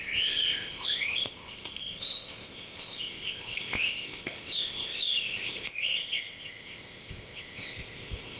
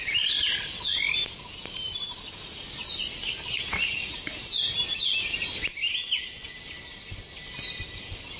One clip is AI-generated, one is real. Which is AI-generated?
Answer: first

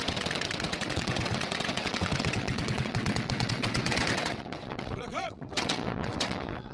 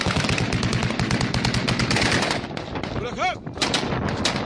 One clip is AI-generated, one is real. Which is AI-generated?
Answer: first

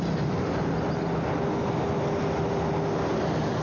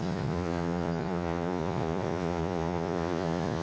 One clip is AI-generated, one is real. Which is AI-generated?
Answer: second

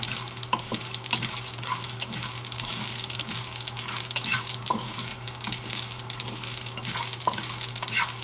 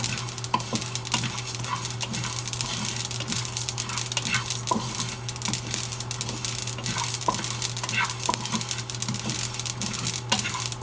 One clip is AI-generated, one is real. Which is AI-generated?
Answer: first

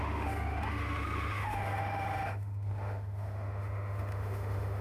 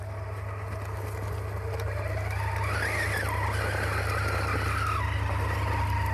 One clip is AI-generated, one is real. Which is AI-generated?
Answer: first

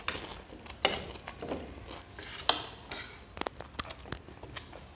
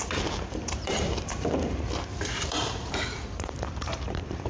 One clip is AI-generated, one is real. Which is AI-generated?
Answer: second